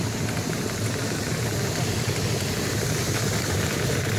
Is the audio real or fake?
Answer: real